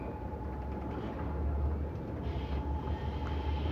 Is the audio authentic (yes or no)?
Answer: yes